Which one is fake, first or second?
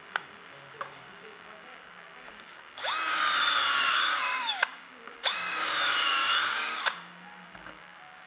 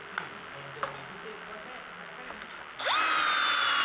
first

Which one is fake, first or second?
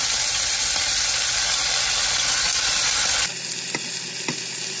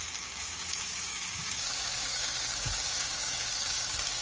second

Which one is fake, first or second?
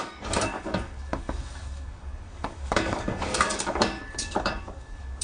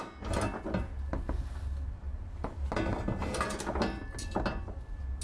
first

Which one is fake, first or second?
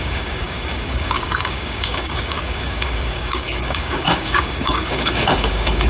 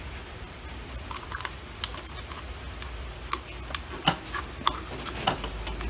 first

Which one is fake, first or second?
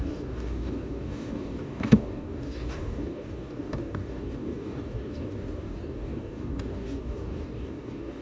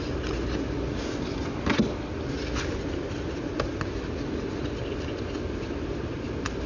first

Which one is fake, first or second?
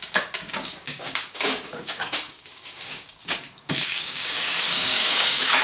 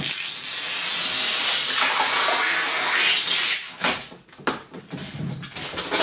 first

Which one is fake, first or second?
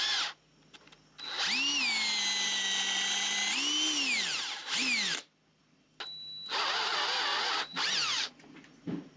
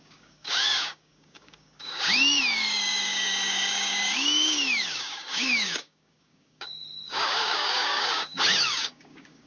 second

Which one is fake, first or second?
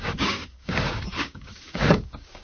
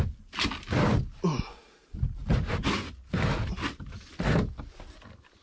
first